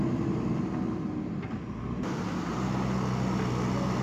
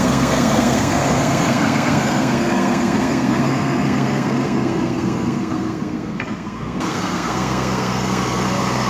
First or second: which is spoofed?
second